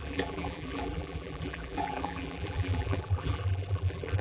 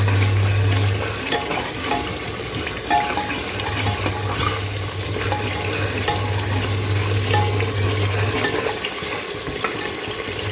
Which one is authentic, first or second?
second